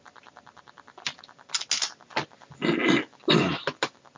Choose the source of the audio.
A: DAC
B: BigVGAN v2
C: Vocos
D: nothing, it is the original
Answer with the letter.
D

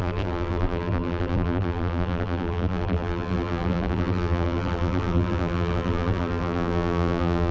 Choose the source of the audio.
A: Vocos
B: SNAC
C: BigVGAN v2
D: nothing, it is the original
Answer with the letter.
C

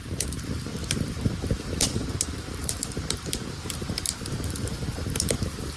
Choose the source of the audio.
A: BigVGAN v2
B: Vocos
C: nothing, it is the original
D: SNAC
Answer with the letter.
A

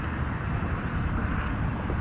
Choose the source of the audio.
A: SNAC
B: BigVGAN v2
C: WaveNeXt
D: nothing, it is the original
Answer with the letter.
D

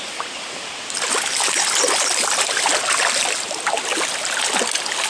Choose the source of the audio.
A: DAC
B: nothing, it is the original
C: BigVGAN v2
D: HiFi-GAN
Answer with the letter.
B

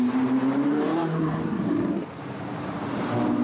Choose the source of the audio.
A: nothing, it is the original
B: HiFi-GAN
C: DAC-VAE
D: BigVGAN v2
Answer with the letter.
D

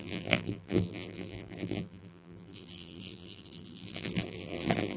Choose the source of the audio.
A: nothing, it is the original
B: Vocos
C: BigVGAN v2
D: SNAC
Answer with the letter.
C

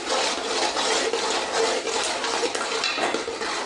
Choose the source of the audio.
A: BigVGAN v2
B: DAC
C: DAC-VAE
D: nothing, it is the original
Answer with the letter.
D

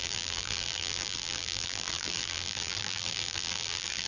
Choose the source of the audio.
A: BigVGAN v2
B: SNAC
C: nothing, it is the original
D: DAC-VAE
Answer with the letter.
A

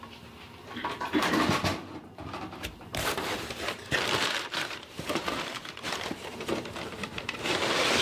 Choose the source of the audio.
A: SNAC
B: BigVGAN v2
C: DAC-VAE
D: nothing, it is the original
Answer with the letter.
B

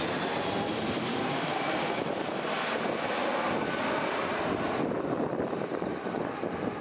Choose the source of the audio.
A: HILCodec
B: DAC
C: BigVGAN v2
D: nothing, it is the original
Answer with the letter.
C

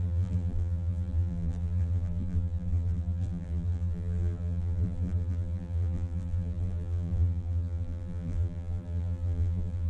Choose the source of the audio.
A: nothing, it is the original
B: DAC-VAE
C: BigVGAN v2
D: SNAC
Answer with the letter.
C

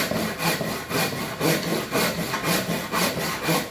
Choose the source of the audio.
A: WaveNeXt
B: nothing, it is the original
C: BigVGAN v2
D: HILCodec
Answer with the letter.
B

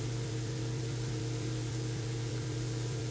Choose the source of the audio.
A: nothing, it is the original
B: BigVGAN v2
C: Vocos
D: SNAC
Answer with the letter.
B